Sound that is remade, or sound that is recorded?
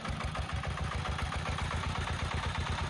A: recorded